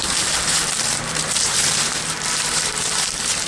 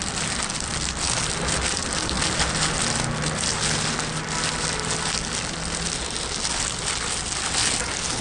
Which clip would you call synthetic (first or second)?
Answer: first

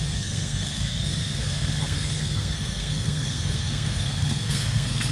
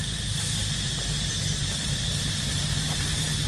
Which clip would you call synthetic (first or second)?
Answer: first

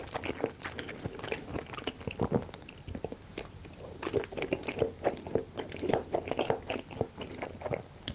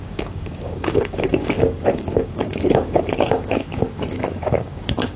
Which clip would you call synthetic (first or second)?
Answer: second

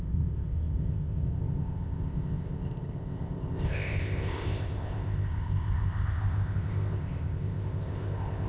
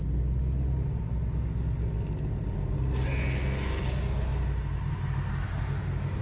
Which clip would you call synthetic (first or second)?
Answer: first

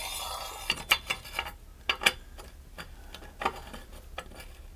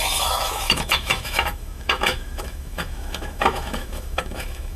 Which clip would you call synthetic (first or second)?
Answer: second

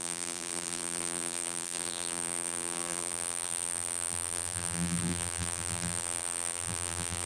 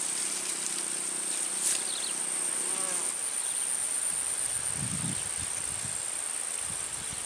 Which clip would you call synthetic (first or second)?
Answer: first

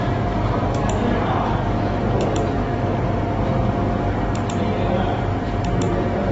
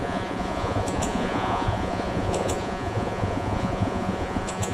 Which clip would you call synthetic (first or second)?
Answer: second